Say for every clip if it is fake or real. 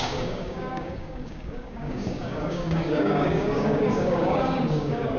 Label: fake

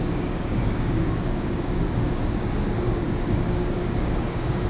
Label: fake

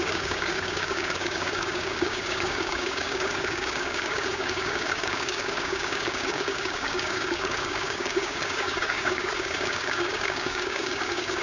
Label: fake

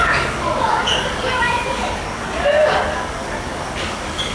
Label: fake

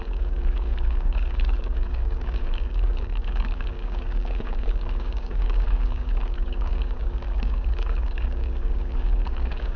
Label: fake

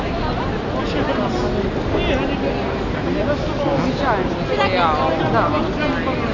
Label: real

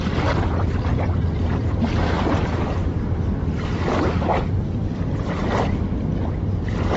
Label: real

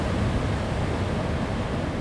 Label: real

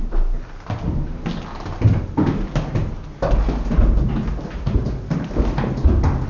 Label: real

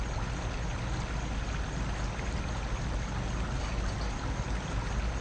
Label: real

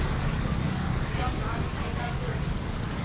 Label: fake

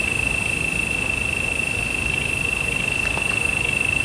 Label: real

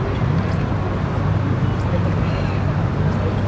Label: real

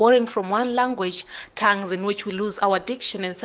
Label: fake